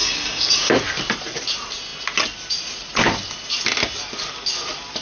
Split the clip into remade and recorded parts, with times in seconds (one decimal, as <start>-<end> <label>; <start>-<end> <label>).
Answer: 0.0-0.7 remade; 0.7-5.0 recorded